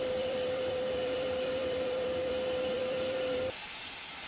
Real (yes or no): no